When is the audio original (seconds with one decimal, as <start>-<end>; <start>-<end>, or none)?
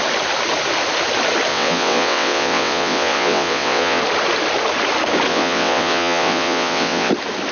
0.0-1.5; 4.0-5.3; 7.1-7.5